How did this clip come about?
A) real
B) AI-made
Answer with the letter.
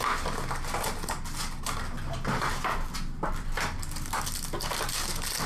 A